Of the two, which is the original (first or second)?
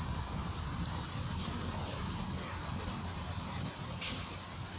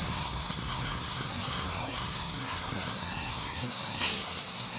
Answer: first